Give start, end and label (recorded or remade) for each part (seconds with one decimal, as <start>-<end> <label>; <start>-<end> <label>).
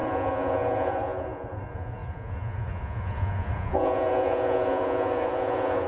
0.0-5.9 remade